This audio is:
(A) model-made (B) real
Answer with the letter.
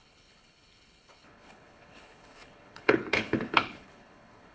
A